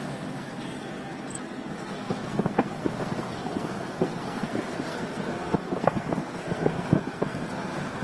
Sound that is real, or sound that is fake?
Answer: fake